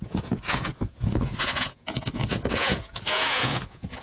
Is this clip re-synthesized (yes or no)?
yes